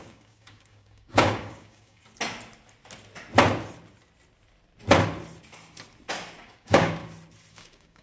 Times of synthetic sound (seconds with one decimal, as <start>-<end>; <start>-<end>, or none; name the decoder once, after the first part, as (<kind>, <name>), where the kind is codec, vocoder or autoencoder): 0.0-2.0 (codec, DAC); 6.4-7.0; 7.5-8.0

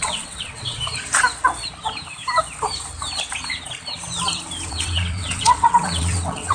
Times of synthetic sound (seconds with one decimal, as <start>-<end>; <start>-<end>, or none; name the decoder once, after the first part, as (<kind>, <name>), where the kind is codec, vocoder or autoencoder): 0.0-0.8 (vocoder, WaveNeXt); 4.7-6.5